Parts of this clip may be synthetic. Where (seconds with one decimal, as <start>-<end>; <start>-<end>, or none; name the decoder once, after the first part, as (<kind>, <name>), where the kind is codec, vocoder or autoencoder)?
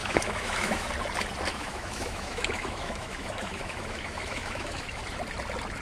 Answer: 0.0-0.9 (autoencoder, DAC-VAE); 1.5-5.0